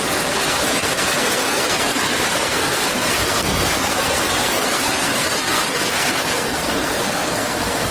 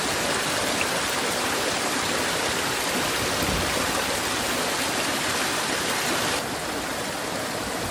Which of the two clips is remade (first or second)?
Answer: first